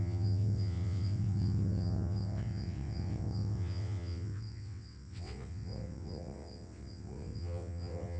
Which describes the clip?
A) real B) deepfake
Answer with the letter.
B